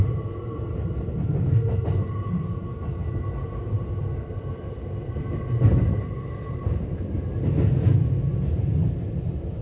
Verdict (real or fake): real